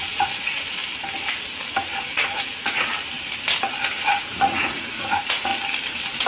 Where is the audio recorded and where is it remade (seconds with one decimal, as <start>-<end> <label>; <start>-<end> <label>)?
0.0-0.8 remade; 0.8-2.1 recorded; 2.1-2.9 remade; 2.9-4.1 recorded; 4.1-5.5 remade; 5.5-6.3 recorded